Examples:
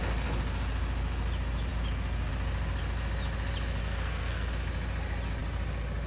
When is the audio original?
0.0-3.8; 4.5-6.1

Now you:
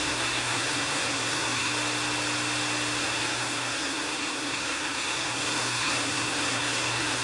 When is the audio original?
1.7-3.0

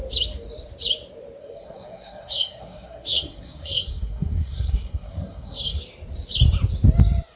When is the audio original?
0.0-1.4; 5.8-7.4

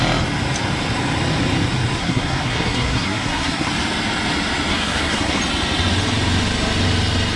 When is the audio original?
0.0-2.0; 3.7-4.7; 5.4-7.4

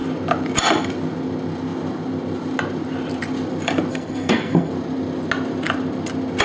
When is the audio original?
0.0-3.9; 4.7-6.4

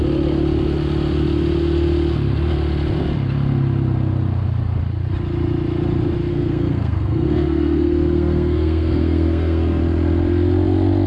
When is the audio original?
0.0-6.3; 9.8-11.1

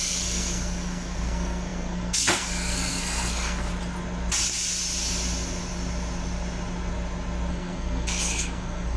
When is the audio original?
3.7-7.5